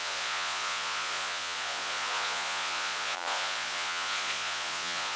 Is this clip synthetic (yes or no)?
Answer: yes